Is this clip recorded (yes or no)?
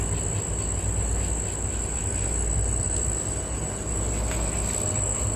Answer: yes